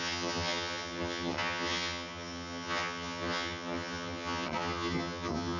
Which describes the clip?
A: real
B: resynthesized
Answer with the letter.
B